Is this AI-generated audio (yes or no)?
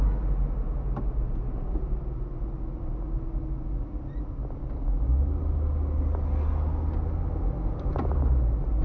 no